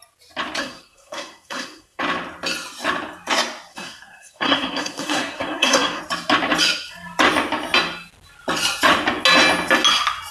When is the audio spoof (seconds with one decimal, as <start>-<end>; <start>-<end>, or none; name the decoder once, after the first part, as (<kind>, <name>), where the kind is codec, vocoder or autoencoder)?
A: 0.6-2.0 (codec, SNAC); 3.7-6.0